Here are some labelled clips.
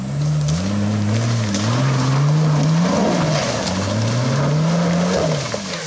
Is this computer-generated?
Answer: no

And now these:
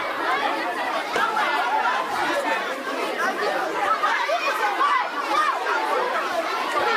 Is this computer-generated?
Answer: yes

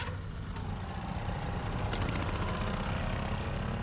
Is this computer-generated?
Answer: no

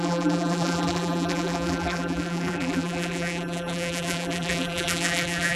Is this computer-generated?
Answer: yes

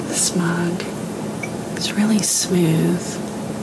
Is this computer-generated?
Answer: yes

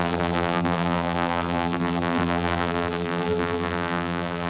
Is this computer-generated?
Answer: yes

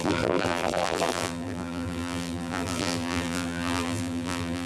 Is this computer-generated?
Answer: yes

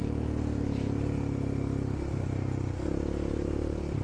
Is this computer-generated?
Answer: no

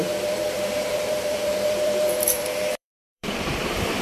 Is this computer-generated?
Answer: yes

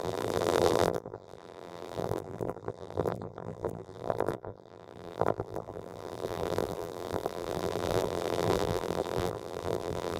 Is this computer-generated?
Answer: yes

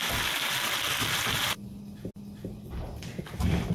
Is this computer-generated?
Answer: no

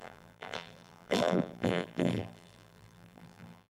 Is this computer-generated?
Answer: yes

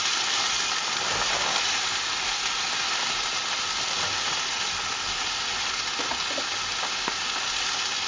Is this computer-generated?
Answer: no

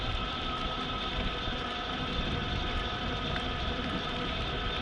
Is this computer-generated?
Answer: yes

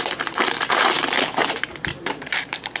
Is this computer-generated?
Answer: yes